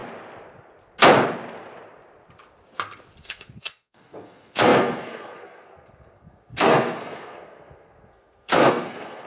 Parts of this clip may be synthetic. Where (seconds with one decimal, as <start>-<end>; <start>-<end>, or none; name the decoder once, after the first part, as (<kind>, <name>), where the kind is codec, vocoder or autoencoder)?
3.2-9.3 (codec, SNAC)